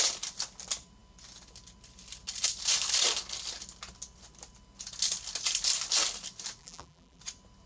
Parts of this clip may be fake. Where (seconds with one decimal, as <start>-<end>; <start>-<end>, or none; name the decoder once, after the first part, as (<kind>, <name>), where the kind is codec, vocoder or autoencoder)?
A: 6.6-7.2 (vocoder, BigVGAN v2)